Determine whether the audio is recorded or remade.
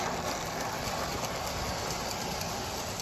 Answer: recorded